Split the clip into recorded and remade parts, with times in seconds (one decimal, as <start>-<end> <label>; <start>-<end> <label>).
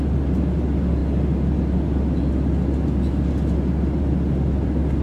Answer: 0.0-5.0 recorded